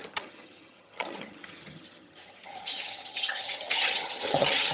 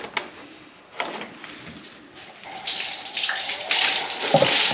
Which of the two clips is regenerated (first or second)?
first